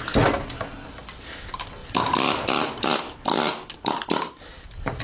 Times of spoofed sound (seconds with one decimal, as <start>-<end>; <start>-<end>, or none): 1.8-5.0